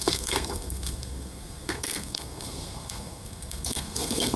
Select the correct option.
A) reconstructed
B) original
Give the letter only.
A